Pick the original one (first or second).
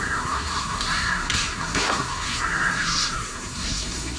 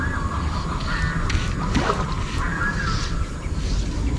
second